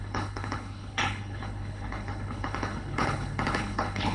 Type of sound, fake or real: fake